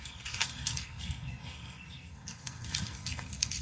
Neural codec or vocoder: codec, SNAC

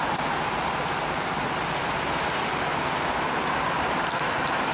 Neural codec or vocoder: none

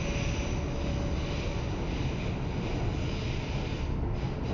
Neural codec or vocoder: none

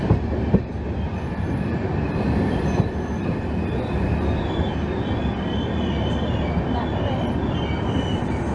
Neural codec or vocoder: none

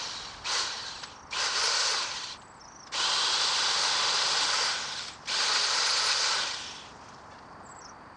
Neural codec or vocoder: none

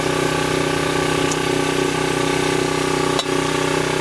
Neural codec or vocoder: none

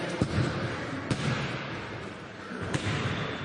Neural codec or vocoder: vocoder, BigVGAN v2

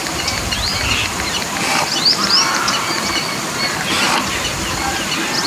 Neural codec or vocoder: none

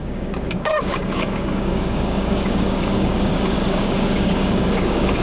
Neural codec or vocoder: codec, DAC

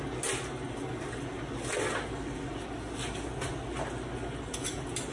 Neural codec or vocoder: none